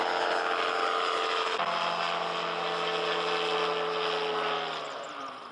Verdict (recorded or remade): recorded